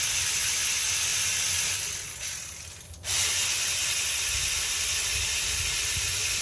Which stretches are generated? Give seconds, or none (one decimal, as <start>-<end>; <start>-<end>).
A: none